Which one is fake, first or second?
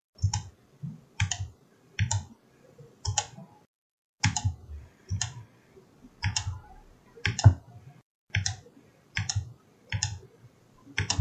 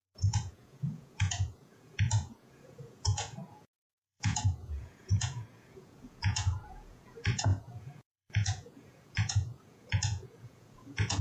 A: second